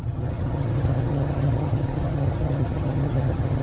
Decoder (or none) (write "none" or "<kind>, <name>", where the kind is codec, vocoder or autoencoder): vocoder, HiFi-GAN